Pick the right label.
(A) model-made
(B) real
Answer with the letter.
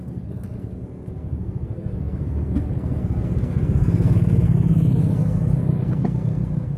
A